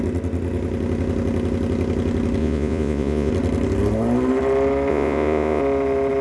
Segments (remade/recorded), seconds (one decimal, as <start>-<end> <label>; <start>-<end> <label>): 0.0-2.4 recorded; 2.4-3.3 remade; 3.3-4.9 recorded; 4.9-5.6 remade; 5.6-6.2 recorded